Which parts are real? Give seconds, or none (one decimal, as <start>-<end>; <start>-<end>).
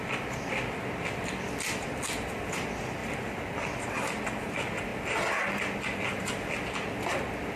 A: 0.0-7.6